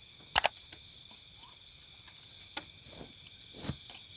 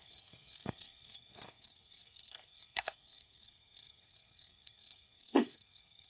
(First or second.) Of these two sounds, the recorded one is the first